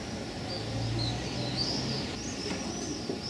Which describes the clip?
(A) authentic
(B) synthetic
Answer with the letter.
A